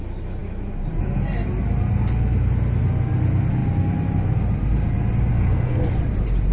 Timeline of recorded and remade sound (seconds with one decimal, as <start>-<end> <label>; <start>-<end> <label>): 0.0-5.3 recorded; 5.3-5.9 remade; 5.9-6.5 recorded